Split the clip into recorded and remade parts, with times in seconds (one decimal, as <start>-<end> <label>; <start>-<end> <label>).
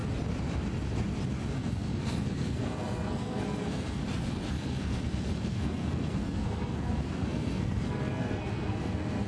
0.0-1.5 recorded; 1.5-4.0 remade; 4.0-4.5 recorded; 4.5-9.3 remade